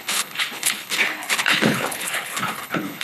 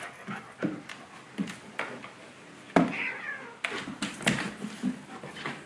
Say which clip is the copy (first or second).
first